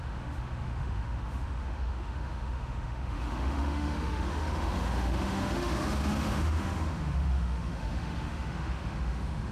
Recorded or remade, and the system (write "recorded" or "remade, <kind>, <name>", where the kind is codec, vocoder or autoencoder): remade, autoencoder, DAC-VAE